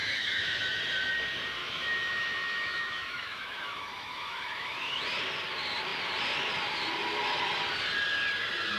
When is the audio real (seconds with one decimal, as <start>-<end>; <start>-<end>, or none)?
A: 0.8-1.6; 5.0-8.8